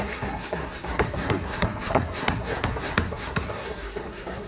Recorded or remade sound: remade